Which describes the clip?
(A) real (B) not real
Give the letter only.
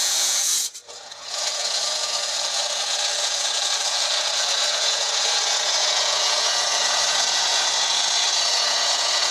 B